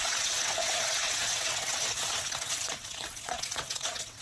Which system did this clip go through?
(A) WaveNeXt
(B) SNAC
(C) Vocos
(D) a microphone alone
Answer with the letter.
A